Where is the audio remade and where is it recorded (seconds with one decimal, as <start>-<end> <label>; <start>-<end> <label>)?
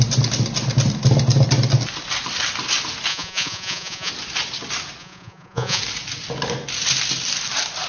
0.0-3.1 recorded; 3.1-4.1 remade; 4.1-5.0 recorded; 5.0-5.8 remade; 5.8-7.9 recorded